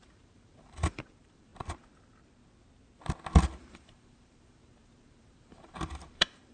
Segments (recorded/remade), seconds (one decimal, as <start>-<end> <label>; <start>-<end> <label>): 0.0-1.5 remade; 1.5-3.4 recorded; 3.4-6.5 remade